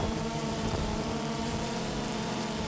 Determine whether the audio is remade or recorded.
remade